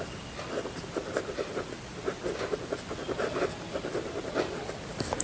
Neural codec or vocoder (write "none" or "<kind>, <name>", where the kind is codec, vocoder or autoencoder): none